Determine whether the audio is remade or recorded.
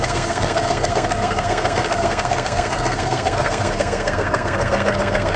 remade